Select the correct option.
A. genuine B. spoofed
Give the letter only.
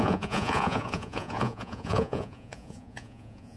B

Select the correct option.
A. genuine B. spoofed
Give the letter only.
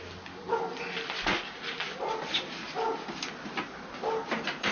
A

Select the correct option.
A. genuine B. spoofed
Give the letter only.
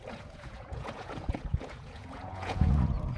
B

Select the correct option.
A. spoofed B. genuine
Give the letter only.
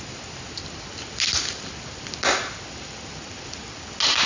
B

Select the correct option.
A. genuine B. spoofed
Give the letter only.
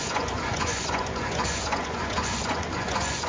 B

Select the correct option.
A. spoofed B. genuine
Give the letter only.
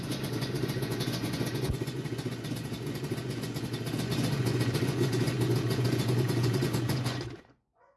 A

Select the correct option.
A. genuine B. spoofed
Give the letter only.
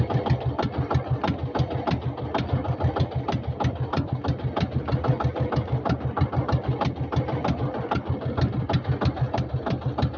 A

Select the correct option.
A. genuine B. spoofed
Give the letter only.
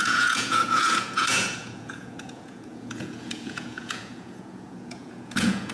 B